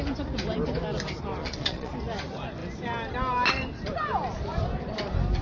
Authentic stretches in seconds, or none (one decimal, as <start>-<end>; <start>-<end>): 0.0-1.4; 1.9-5.4